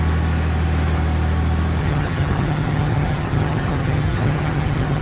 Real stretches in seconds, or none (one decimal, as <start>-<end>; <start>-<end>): 0.0-1.8